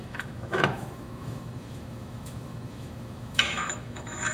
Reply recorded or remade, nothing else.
remade